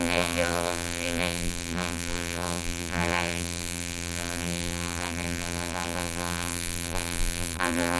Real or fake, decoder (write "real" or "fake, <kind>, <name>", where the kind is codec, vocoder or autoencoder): fake, vocoder, BigVGAN v2